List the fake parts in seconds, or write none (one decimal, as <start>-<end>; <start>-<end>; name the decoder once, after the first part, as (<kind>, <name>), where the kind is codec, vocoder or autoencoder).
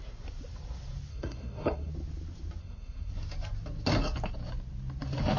1.1-1.9 (codec, SNAC); 2.6-3.1